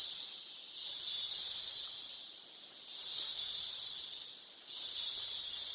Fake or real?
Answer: real